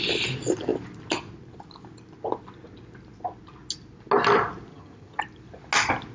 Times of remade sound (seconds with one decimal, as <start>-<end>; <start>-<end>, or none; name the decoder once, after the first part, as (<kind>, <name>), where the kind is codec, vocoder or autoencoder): 4.7-5.2 (vocoder, HiFi-GAN)